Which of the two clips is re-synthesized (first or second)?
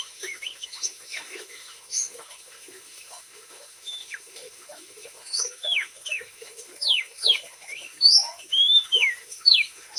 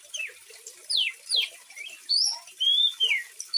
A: first